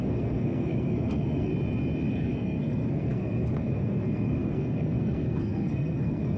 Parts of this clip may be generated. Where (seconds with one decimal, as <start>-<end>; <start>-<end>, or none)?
0.0-1.5; 2.1-6.4